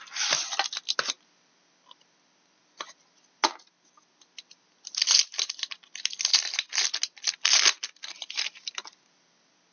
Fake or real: real